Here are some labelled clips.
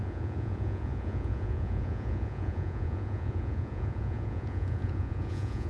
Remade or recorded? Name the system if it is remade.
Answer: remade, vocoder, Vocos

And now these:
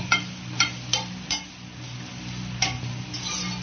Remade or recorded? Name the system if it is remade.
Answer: recorded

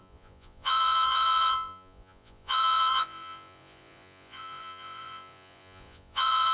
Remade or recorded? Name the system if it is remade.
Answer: remade, vocoder, Vocos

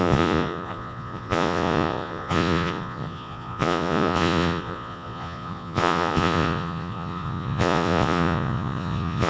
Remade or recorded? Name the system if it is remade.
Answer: remade, vocoder, Vocos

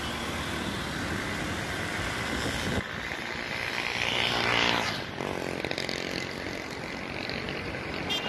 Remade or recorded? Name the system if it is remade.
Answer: recorded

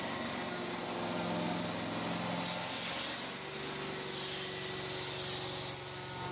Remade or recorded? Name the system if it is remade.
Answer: recorded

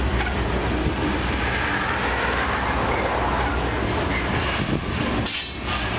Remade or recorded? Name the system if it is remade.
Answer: recorded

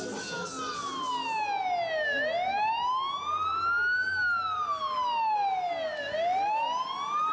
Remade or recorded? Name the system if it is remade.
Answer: recorded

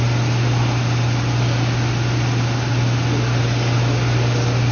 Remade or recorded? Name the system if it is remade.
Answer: recorded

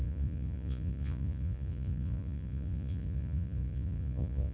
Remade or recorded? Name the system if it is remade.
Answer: remade, vocoder, Vocos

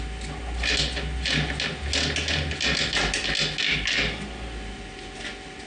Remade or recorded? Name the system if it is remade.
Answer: recorded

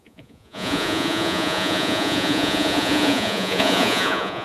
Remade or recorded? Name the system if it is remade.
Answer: remade, vocoder, Vocos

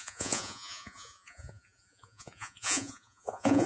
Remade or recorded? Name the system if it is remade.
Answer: remade, vocoder, Vocos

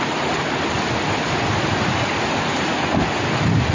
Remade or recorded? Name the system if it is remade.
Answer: recorded